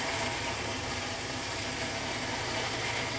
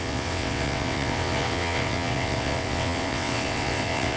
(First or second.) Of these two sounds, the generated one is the second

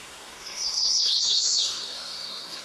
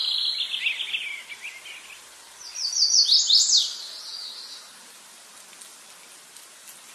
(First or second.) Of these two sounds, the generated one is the first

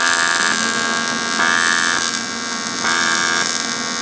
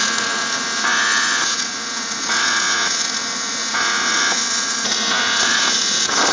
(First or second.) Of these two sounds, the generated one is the second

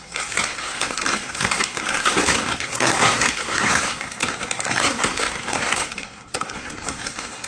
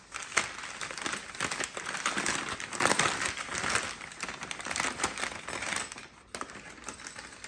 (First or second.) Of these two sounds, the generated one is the first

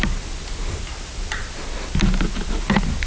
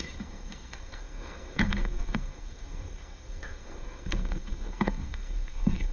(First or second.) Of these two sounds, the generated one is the second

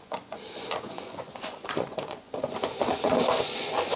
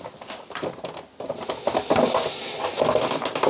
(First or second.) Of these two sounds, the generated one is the first